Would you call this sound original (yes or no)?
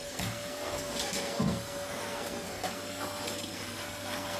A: no